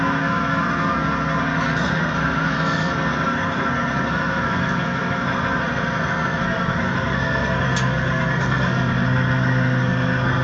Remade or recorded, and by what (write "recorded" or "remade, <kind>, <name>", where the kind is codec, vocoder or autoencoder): remade, codec, SNAC